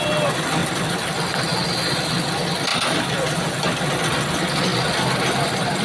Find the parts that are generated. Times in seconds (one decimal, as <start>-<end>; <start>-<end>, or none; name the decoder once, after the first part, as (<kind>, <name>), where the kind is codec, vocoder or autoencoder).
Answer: none